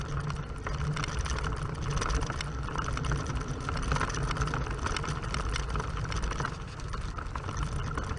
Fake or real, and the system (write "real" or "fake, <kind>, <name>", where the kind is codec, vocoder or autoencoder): fake, vocoder, BigVGAN v2